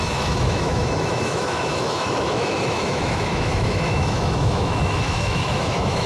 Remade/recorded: remade